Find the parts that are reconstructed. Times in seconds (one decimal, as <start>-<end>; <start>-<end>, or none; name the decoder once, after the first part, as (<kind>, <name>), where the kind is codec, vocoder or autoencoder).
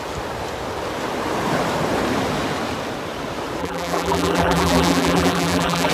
3.6-5.9 (vocoder, BigVGAN v2)